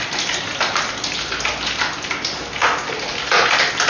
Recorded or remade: recorded